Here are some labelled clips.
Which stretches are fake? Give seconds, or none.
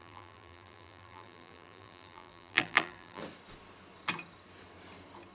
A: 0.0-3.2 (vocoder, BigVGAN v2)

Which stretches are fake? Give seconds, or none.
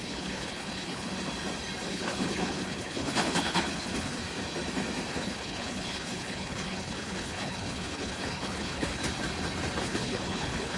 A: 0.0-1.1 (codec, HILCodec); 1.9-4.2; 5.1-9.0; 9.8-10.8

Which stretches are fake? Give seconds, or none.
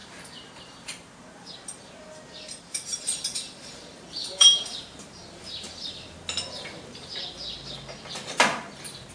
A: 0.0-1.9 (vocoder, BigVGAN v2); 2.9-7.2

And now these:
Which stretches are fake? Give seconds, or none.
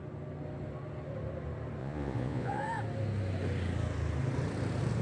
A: 1.8-2.6 (vocoder, Vocos)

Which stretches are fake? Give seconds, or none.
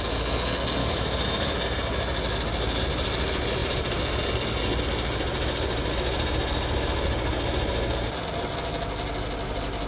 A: 0.8-1.6 (autoencoder, DAC-VAE)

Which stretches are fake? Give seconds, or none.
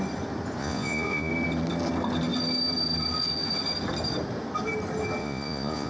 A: 0.6-1.3 (vocoder, Vocos); 5.2-5.9